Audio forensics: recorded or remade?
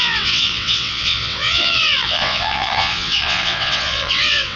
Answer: remade